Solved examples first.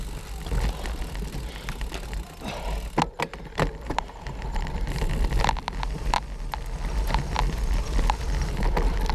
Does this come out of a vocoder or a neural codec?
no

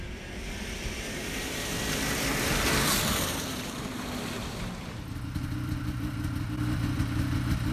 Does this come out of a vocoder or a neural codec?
yes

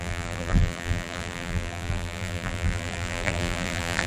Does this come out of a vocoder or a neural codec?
yes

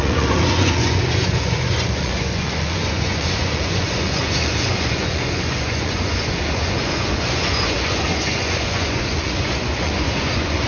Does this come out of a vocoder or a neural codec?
yes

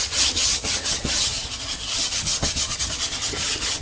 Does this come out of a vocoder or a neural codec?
yes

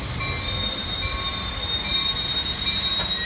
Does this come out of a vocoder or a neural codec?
no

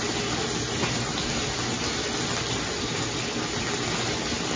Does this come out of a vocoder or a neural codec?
no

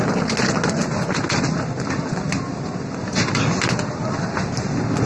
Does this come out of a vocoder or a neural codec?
no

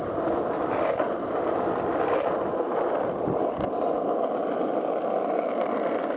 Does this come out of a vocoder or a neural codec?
no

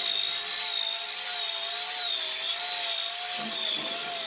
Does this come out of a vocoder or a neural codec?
no